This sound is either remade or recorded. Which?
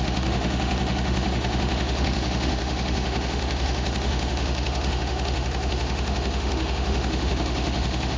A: remade